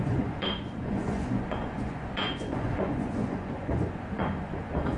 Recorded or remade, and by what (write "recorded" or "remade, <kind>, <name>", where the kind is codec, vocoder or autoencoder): remade, vocoder, Vocos